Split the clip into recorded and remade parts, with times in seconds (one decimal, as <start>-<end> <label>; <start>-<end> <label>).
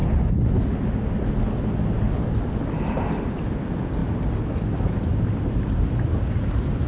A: 0.0-6.9 recorded